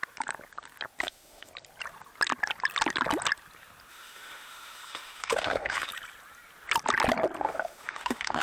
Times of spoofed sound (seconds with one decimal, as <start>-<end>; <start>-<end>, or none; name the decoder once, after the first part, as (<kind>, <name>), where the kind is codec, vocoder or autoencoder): 1.0-1.5 (autoencoder, DAC-VAE); 3.9-5.9; 7.4-8.4